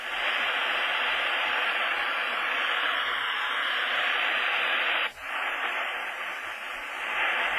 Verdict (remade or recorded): recorded